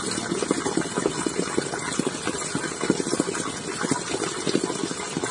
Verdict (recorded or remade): recorded